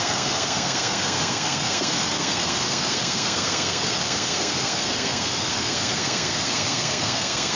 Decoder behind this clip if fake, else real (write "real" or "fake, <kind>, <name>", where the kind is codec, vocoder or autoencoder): fake, codec, SNAC